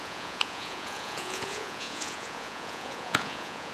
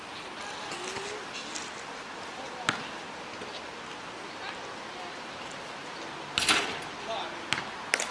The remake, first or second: first